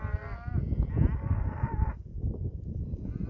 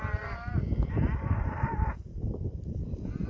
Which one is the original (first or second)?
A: first